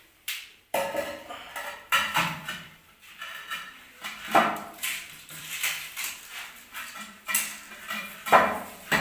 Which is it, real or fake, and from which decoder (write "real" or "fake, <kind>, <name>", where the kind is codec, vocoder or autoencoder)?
fake, vocoder, BigVGAN v2